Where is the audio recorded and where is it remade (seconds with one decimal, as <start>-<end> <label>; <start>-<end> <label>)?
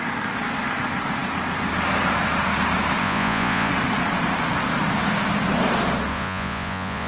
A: 0.0-3.0 recorded; 3.0-3.7 remade; 3.7-6.1 recorded; 6.1-7.1 remade